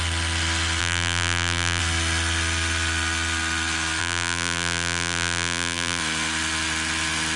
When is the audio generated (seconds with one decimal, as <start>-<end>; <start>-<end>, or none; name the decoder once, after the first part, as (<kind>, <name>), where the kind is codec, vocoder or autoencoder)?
0.8-1.8 (vocoder, BigVGAN v2); 4.0-6.0